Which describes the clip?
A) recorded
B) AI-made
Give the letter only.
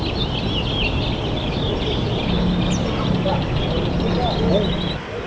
A